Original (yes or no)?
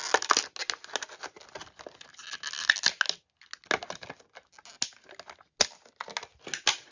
yes